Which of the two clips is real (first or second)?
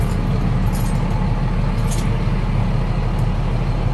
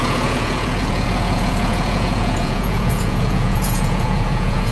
first